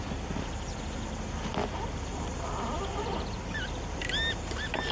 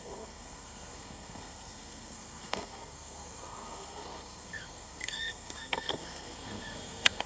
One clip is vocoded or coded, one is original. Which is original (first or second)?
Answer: first